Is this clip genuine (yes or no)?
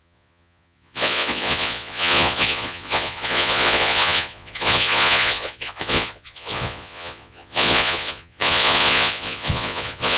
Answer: no